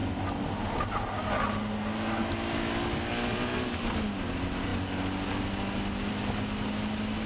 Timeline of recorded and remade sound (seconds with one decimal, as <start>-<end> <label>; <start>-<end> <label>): 0.0-7.3 recorded